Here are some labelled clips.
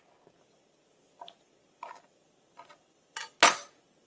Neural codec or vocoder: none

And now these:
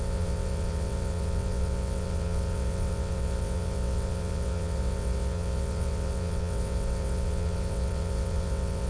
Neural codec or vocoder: vocoder, WaveNeXt